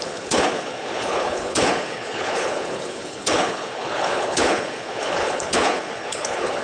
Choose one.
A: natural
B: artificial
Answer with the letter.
B